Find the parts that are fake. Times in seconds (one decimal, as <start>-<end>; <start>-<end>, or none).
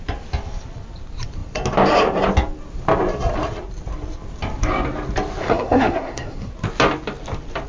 5.4-6.5